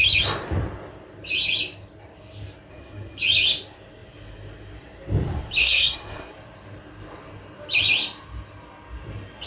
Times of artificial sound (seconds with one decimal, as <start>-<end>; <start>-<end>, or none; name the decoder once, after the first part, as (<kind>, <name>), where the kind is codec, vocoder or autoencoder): 2.7-3.2 (codec, SNAC); 5.6-6.3